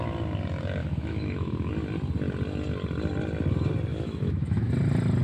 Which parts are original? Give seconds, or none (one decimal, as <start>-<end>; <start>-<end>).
0.0-0.8; 1.7-3.9; 4.7-5.2